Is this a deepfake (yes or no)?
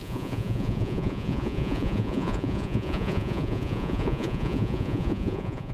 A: yes